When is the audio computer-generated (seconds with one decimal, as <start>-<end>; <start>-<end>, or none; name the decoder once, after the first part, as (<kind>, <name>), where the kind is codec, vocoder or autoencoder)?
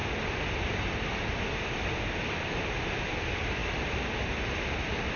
none